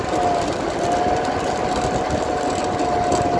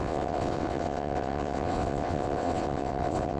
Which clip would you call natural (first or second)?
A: first